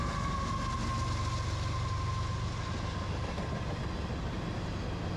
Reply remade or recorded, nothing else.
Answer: recorded